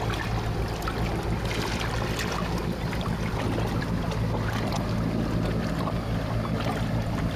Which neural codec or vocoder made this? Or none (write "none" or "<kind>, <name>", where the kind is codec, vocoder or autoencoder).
none